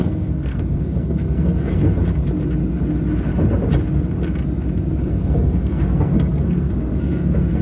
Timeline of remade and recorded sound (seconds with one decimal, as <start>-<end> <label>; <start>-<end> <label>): 0.0-2.0 remade; 2.0-5.0 recorded; 5.0-7.6 remade